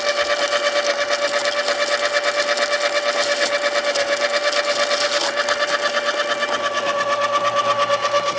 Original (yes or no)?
yes